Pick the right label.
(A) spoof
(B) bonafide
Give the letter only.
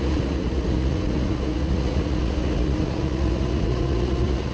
A